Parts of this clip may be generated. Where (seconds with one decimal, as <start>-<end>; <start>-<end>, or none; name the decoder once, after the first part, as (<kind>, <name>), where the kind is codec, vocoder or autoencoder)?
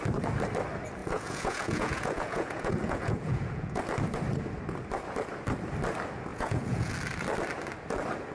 1.0-3.8 (vocoder, Vocos); 6.3-6.9